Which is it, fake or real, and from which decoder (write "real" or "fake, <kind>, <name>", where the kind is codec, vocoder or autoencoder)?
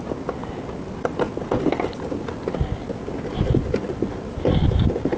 real